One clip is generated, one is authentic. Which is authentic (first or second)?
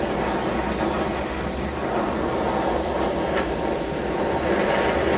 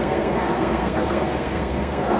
first